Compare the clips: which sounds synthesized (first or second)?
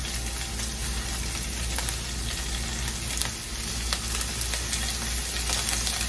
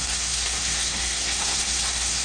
second